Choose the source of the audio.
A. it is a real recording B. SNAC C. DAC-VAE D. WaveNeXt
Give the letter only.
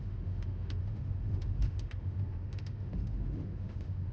C